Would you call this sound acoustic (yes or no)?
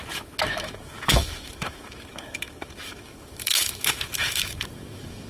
no